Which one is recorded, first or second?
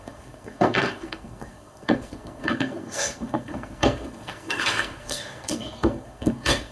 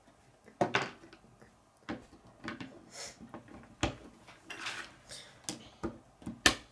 second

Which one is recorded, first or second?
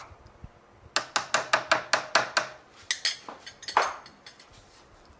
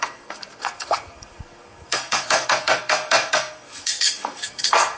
first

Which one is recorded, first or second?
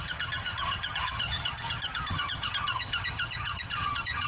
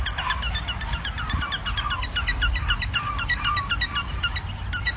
second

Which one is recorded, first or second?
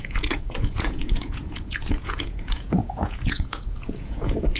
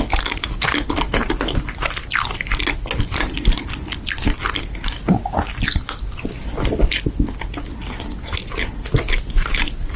second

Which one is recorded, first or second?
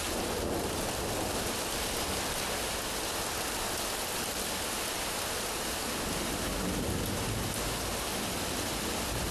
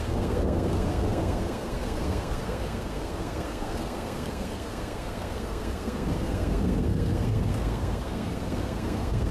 first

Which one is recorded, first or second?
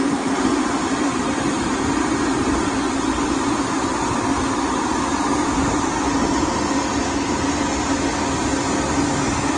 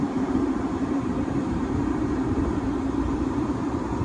first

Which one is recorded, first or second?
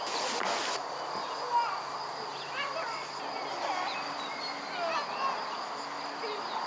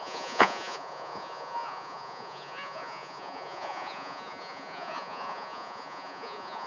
first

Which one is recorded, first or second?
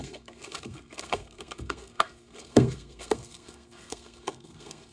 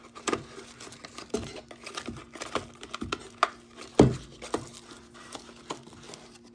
second